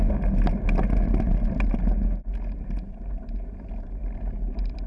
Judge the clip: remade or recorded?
recorded